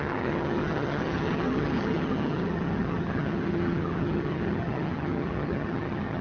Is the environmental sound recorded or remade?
remade